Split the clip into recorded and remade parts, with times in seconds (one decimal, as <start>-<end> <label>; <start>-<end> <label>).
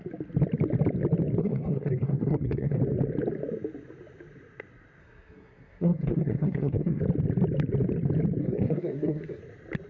0.0-1.4 recorded; 1.4-2.8 remade; 2.8-5.0 recorded; 5.0-7.0 remade; 7.0-8.4 recorded; 8.4-9.4 remade; 9.4-9.9 recorded